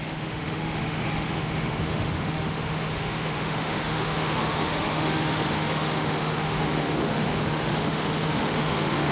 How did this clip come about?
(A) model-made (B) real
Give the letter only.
A